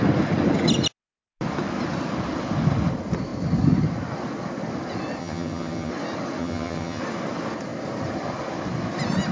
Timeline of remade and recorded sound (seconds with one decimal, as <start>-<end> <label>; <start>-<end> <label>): 0.0-5.2 recorded; 5.2-5.9 remade; 5.9-6.4 recorded; 6.4-7.0 remade; 7.0-9.3 recorded